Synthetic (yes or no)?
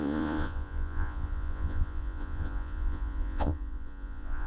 yes